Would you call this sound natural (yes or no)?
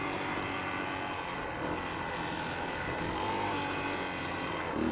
yes